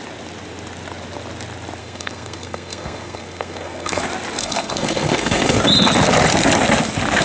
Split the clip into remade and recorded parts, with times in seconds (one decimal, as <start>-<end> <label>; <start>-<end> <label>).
0.0-1.8 recorded; 1.8-4.0 remade; 4.0-4.4 recorded; 4.4-5.6 remade; 5.6-7.2 recorded